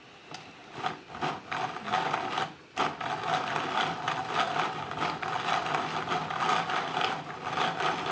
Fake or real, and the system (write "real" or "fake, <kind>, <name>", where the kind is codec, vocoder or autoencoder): real